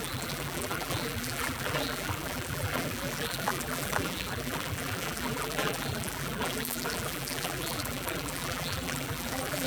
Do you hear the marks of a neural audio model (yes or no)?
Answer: yes